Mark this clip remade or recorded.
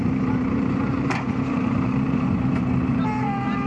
remade